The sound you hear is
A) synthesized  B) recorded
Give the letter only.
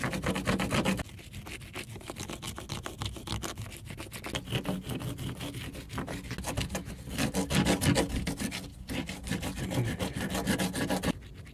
B